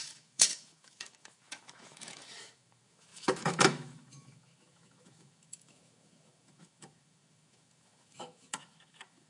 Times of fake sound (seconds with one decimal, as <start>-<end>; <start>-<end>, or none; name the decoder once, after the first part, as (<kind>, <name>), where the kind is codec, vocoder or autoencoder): 0.0-9.3 (autoencoder, DAC-VAE)